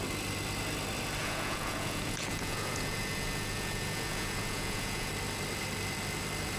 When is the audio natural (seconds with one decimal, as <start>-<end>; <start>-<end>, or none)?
0.0-1.2; 5.1-6.6